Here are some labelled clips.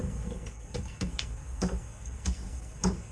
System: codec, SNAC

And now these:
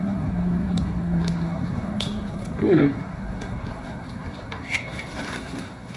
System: codec, SNAC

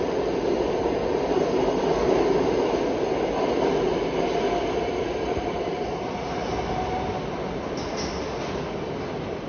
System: none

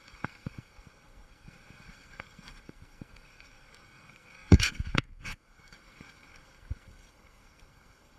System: codec, SNAC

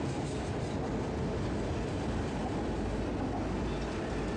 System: none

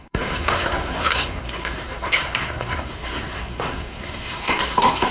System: codec, SNAC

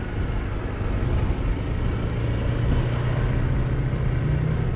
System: none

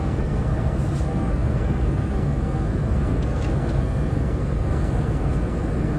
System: codec, SNAC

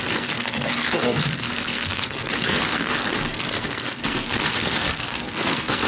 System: codec, SNAC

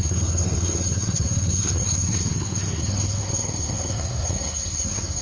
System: codec, SNAC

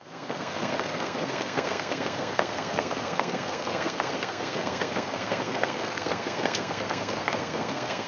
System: codec, SNAC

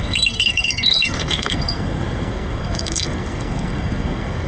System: codec, SNAC